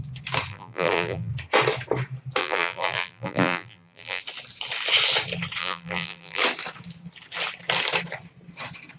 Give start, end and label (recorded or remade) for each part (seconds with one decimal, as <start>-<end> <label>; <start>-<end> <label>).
0.0-0.5 recorded; 0.5-1.3 remade; 1.3-2.4 recorded; 2.4-4.2 remade; 4.2-5.6 recorded; 5.6-6.4 remade; 6.4-9.0 recorded